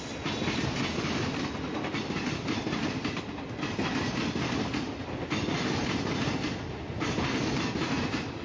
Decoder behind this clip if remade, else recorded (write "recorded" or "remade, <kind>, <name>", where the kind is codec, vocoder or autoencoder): recorded